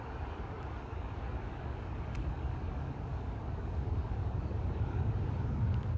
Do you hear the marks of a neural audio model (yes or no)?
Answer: yes